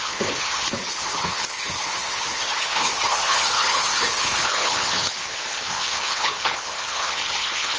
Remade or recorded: remade